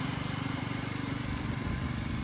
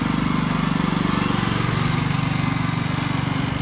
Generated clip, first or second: first